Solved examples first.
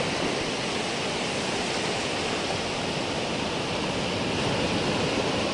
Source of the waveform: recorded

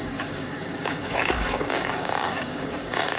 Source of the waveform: remade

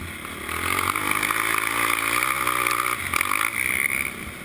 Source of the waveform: recorded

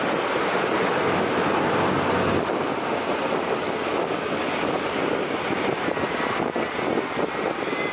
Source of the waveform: recorded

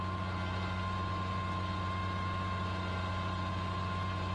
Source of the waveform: recorded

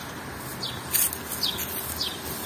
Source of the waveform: recorded